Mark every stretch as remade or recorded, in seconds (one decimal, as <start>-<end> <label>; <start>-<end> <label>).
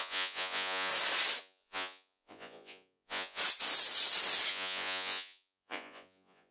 0.0-0.9 remade; 0.9-1.4 recorded; 1.4-3.4 remade; 3.4-4.5 recorded; 4.5-6.5 remade